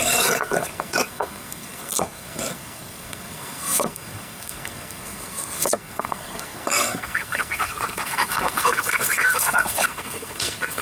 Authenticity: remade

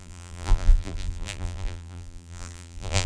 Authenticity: remade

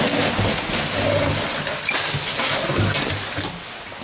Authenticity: recorded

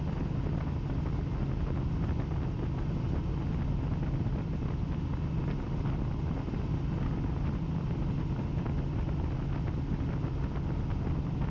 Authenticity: recorded